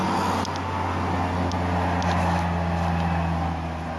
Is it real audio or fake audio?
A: real